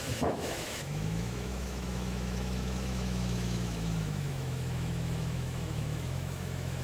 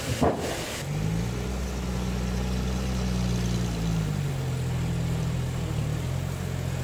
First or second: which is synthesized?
first